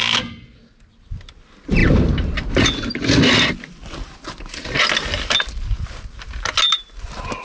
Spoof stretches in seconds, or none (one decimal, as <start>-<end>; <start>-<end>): none